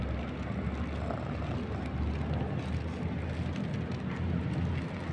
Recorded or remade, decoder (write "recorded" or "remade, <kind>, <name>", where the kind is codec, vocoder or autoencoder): recorded